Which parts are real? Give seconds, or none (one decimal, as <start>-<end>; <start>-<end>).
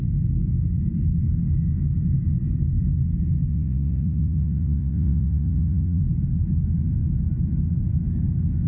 0.0-3.5; 6.0-8.7